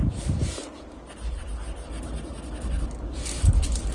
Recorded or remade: recorded